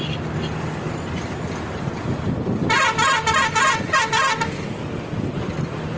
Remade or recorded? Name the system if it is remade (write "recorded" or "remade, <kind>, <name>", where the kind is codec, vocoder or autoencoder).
recorded